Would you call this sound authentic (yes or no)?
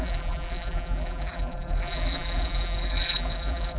no